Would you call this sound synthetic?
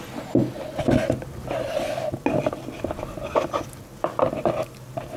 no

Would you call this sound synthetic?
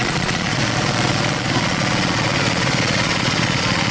yes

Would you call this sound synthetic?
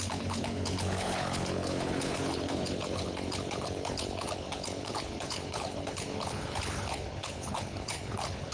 yes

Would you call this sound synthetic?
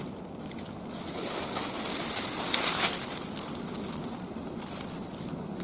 no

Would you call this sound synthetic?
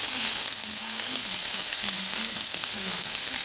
yes